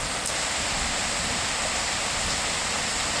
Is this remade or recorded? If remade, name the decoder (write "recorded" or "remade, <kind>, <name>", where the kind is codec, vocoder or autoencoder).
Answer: recorded